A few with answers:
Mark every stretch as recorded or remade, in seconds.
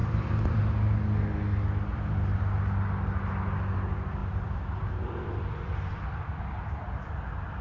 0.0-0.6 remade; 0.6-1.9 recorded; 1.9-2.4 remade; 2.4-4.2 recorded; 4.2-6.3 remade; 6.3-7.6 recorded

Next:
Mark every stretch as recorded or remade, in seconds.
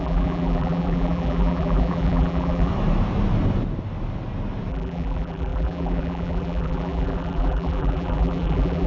0.0-2.7 remade; 2.7-4.7 recorded; 4.7-8.9 remade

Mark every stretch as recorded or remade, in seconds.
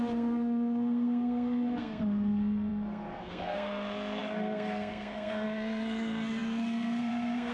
0.0-7.5 remade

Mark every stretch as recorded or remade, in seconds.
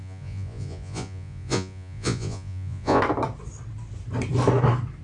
0.0-3.0 remade; 3.0-5.0 recorded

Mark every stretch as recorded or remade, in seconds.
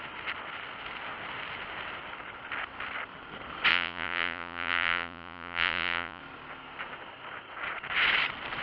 0.0-3.7 recorded; 3.7-6.2 remade; 6.2-8.6 recorded